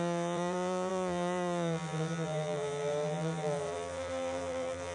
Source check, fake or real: fake